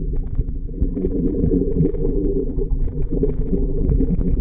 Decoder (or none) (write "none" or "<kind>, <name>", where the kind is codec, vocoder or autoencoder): vocoder, BigVGAN v2